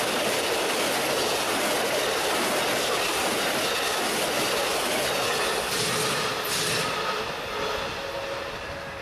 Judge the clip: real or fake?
real